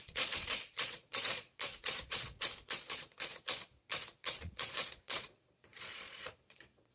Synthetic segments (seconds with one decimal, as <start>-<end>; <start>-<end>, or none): 0.0-6.9